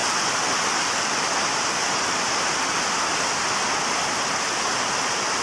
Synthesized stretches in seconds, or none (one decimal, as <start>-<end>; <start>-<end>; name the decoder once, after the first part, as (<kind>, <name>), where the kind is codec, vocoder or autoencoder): none